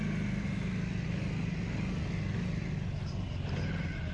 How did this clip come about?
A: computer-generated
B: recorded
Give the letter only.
B